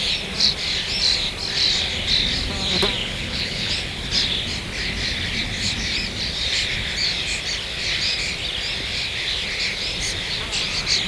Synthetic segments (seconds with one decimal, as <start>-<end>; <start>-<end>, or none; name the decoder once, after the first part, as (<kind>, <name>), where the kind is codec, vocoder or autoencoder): 3.0-4.0 (codec, HILCodec)

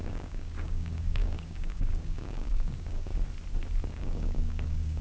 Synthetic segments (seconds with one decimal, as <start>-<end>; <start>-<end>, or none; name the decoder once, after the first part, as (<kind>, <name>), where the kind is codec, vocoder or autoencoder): 0.0-3.1 (codec, DAC); 3.9-5.0

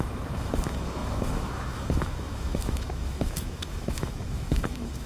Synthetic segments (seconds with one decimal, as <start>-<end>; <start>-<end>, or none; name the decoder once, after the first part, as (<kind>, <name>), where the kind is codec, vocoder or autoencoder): 0.0-5.1 (autoencoder, DAC-VAE)

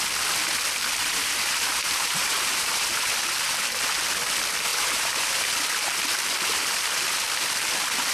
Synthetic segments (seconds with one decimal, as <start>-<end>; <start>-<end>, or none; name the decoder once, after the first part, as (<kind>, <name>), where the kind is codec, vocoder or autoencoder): 1.0-3.2 (vocoder, BigVGAN v2); 4.7-5.5

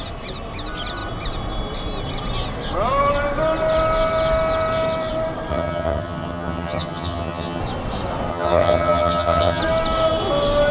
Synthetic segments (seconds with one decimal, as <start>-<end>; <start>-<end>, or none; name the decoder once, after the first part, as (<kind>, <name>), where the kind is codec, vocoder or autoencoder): 5.5-7.6 (vocoder, HiFi-GAN); 8.3-9.6

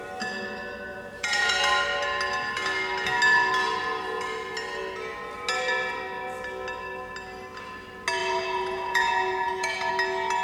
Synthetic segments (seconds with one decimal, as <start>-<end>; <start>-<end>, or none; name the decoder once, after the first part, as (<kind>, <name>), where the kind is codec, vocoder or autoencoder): 0.9-1.7 (vocoder, Vocos); 8.2-9.9

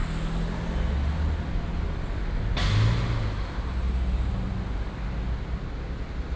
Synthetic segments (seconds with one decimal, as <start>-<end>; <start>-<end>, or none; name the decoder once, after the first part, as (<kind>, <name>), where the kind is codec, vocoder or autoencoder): none

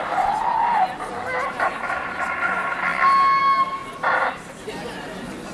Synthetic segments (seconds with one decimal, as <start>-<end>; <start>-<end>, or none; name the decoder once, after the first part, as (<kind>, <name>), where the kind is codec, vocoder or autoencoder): none